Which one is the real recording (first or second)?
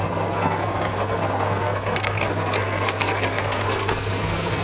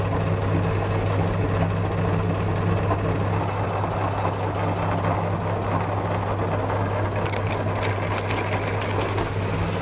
second